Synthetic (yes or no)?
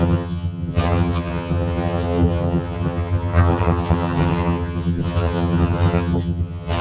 yes